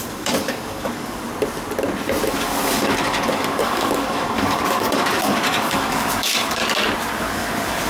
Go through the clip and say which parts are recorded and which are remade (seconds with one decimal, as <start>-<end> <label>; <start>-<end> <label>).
0.0-1.3 remade; 1.3-2.4 recorded; 2.4-6.6 remade; 6.6-7.2 recorded; 7.2-7.9 remade